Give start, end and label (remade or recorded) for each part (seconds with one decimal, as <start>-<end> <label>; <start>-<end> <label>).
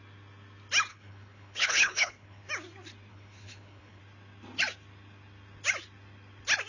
0.0-0.9 recorded; 0.9-2.5 remade; 2.5-3.1 recorded; 3.1-4.0 remade; 4.0-6.7 recorded